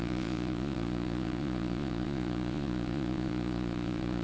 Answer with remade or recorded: remade